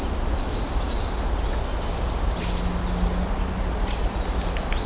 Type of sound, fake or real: real